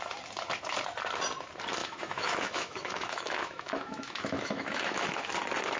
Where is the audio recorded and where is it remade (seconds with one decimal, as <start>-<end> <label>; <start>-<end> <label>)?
0.0-1.8 recorded; 1.8-5.3 remade; 5.3-5.8 recorded